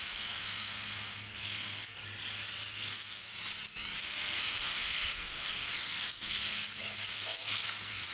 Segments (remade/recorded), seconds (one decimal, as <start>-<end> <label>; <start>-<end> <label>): 0.0-2.0 remade; 2.0-2.7 recorded; 2.7-3.3 remade; 3.3-4.0 recorded; 4.0-8.1 remade